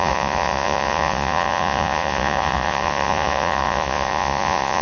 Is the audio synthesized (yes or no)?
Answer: yes